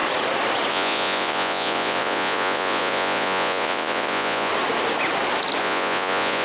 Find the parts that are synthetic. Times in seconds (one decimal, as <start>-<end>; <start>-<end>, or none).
0.7-4.5; 5.6-6.4

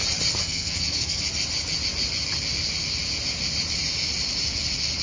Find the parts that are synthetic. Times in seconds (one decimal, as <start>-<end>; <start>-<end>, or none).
0.4-1.2

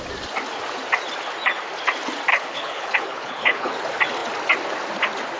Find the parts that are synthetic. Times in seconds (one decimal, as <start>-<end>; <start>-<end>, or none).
2.3-3.7